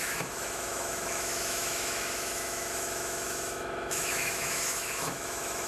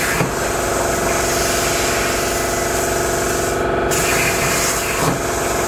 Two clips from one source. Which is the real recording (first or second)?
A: second